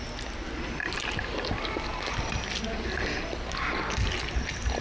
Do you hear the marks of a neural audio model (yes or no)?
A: no